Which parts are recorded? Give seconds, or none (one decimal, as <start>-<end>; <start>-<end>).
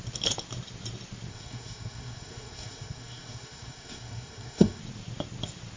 0.0-1.3; 4.8-5.8